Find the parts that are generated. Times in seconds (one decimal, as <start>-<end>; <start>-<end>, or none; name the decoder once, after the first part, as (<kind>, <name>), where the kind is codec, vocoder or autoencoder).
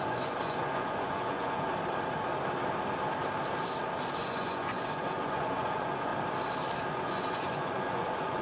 0.0-1.7 (vocoder, Vocos); 4.2-6.1; 6.9-8.4